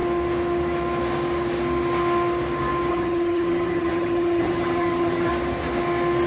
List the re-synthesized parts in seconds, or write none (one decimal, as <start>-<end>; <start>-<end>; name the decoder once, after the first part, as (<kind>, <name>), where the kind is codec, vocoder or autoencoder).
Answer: 2.9-5.3 (vocoder, HiFi-GAN)